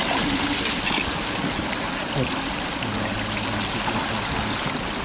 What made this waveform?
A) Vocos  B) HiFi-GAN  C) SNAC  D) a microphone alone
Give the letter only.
D